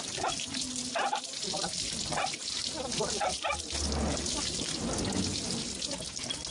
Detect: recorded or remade recorded